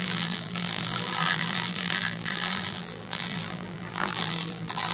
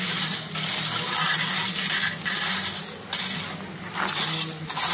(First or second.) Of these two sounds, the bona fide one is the second